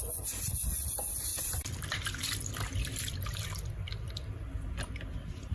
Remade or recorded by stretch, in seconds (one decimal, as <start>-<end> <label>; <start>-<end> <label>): 0.0-1.3 recorded; 1.3-4.1 remade; 4.1-5.5 recorded

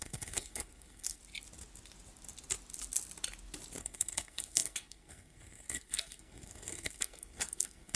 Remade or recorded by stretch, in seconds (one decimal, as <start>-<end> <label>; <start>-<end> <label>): 0.0-1.2 remade; 1.2-3.8 recorded; 3.8-8.0 remade

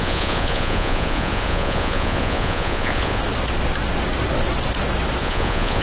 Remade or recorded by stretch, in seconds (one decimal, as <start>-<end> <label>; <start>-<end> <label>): 0.0-3.2 remade; 3.2-5.2 recorded; 5.2-5.8 remade

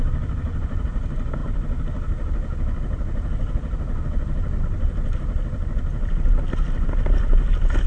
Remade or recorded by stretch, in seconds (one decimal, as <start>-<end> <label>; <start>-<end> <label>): 0.0-7.9 recorded

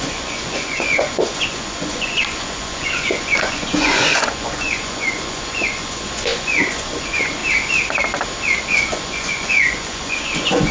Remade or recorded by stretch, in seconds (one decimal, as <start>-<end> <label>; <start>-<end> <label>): 0.0-7.4 remade; 7.4-8.6 recorded; 8.6-10.7 remade

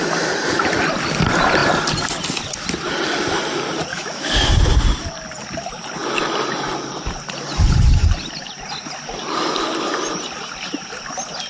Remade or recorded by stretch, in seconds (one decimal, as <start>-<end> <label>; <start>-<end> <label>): 0.0-3.9 recorded; 3.9-4.5 remade; 4.5-11.5 recorded